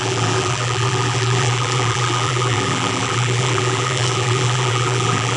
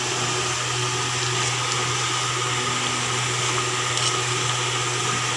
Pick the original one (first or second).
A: second